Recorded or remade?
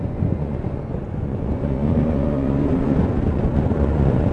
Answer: remade